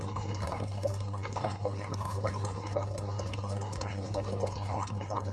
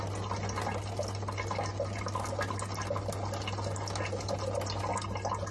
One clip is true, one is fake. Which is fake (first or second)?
first